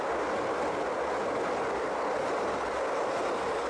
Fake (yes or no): no